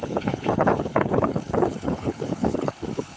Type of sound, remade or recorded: remade